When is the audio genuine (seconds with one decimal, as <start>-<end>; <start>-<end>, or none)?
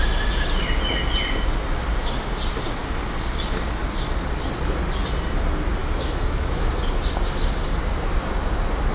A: 0.0-5.8; 6.7-8.9